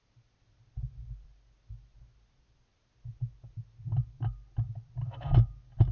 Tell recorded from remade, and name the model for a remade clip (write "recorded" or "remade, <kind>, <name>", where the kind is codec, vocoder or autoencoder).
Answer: recorded